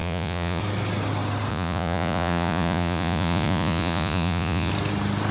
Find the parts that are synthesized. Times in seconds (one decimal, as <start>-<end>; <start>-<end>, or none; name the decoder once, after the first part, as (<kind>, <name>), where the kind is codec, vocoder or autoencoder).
0.0-0.6 (vocoder, Vocos); 1.5-4.7